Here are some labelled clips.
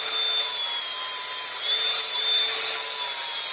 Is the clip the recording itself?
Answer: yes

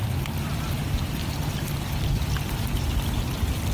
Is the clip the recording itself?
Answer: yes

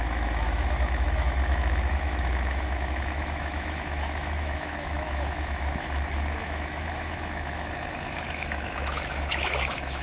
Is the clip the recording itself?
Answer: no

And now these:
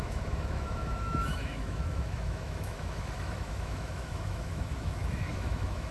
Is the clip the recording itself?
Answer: no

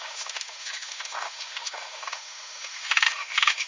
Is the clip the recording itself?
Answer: no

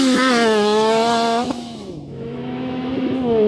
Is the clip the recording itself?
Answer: no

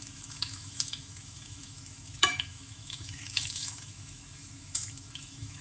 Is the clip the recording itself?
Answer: no